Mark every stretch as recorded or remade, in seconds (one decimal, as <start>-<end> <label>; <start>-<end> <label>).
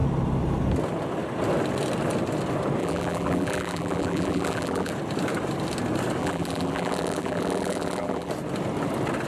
0.0-2.8 recorded; 2.8-4.9 remade; 4.9-6.2 recorded; 6.2-8.3 remade; 8.3-9.3 recorded